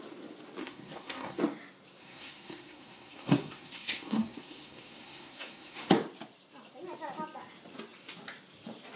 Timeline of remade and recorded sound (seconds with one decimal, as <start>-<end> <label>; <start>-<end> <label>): 0.0-0.6 recorded; 0.6-1.4 remade; 1.4-2.0 recorded; 2.0-5.9 remade; 5.9-9.0 recorded